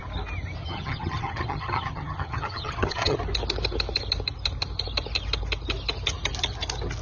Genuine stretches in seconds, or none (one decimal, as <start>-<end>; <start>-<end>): 0.0-0.6; 3.2-7.0